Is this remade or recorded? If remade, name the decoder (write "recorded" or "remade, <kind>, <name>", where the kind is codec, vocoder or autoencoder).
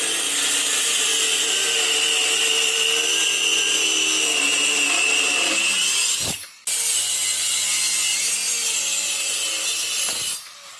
recorded